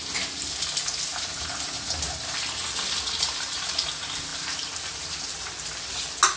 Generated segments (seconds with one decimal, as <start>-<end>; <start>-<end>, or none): 1.1-2.1; 4.3-6.0